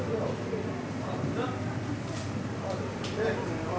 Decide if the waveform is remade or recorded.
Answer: recorded